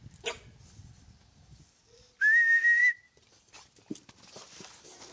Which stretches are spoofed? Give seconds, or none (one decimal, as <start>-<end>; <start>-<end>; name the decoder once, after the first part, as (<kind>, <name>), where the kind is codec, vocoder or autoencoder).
none